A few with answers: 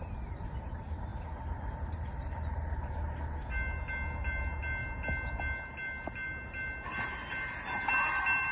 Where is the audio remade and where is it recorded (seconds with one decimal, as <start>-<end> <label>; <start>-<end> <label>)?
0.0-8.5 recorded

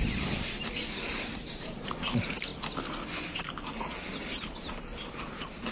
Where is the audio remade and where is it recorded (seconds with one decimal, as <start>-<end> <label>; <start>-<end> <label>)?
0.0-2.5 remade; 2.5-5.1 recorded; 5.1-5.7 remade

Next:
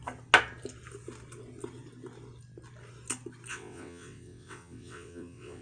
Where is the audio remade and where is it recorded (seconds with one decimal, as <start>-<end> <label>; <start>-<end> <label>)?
0.0-3.5 recorded; 3.5-5.6 remade